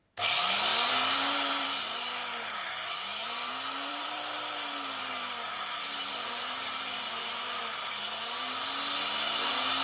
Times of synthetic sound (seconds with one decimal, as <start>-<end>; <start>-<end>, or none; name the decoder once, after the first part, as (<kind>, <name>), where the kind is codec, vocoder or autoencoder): 0.7-2.7 (vocoder, BigVGAN v2); 3.2-8.0